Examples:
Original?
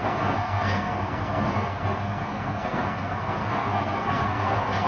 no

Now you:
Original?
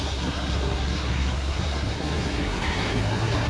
no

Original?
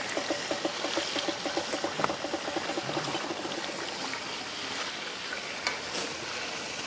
yes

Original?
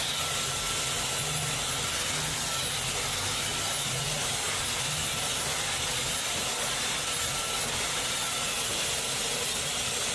yes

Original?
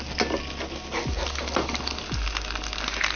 yes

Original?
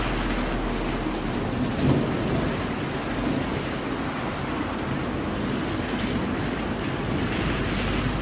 yes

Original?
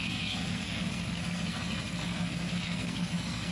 no